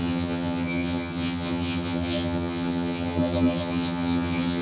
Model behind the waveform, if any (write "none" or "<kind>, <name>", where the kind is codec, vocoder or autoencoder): vocoder, HiFi-GAN